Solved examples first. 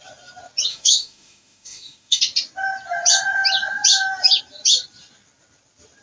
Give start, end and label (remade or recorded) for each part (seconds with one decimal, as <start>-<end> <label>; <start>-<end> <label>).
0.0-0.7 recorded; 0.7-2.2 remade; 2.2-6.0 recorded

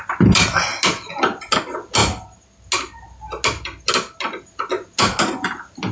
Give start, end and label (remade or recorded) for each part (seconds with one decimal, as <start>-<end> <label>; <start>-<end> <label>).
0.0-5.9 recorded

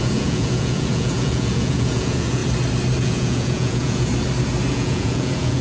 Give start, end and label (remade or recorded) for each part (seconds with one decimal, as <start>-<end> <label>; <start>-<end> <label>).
0.0-2.4 remade; 2.4-3.0 recorded; 3.0-4.1 remade; 4.1-4.7 recorded; 4.7-5.6 remade